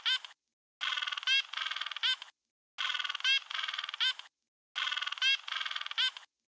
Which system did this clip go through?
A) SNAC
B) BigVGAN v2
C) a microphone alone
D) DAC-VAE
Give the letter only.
C